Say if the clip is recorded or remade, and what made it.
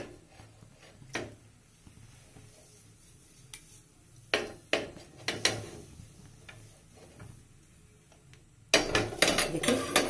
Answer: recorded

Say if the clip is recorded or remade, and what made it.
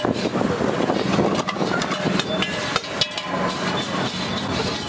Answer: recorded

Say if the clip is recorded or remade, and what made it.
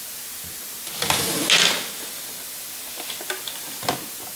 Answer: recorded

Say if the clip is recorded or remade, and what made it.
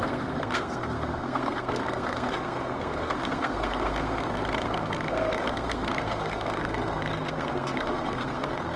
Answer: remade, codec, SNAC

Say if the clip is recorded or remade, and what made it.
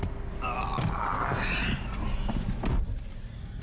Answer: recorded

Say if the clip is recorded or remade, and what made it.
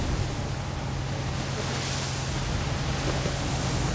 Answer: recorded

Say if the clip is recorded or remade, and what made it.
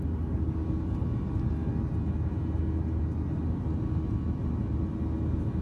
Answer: recorded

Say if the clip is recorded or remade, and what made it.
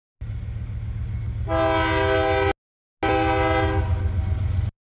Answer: recorded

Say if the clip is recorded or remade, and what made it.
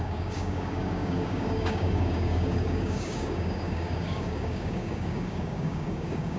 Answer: remade, codec, DAC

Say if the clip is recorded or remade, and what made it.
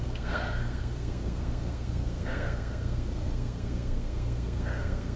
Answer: remade, codec, SNAC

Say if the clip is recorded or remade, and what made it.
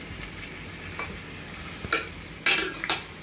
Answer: recorded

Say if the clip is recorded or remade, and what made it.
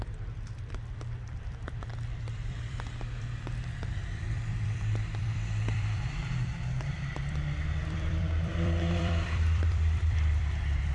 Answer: remade, vocoder, BigVGAN v2